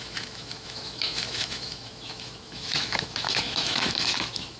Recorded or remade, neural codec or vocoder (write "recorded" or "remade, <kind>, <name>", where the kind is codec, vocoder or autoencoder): remade, autoencoder, DAC-VAE